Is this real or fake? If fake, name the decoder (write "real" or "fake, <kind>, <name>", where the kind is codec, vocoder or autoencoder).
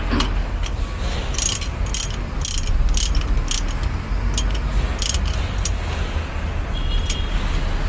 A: real